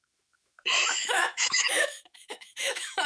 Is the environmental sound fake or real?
fake